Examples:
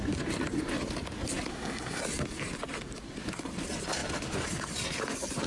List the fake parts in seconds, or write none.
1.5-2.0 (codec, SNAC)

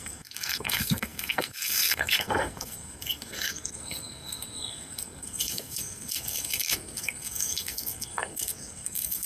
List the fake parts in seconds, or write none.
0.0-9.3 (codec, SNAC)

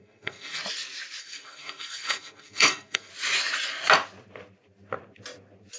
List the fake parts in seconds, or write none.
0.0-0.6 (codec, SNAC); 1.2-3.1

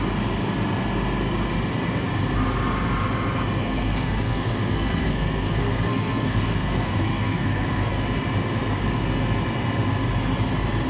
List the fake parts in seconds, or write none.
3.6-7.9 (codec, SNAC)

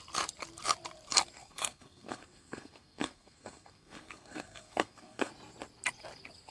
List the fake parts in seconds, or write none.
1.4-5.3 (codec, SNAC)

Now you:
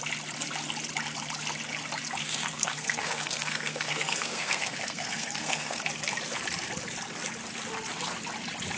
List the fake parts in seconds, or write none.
2.2-5.8 (codec, SNAC)

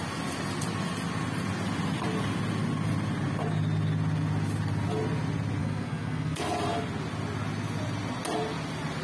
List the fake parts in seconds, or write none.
5.6-6.4 (codec, SNAC)

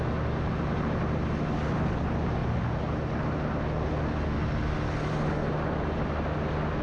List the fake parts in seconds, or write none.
none